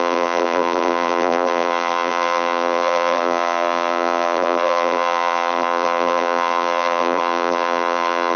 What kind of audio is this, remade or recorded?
remade